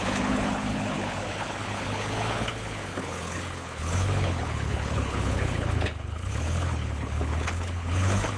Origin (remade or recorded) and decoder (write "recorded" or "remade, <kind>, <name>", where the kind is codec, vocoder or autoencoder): remade, codec, HILCodec